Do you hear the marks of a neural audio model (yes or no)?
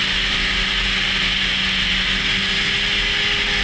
no